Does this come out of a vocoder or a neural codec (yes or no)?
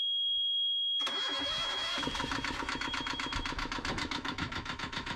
yes